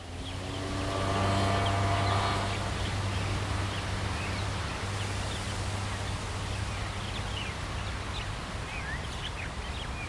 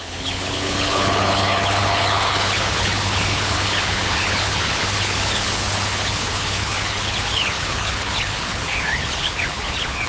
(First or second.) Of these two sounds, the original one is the first